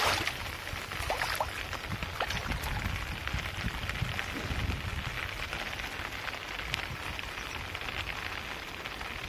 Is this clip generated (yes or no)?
no